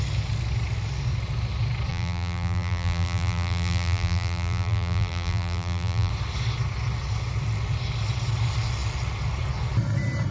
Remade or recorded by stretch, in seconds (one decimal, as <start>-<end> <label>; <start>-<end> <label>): 0.0-1.9 recorded; 1.9-6.1 remade; 6.1-10.3 recorded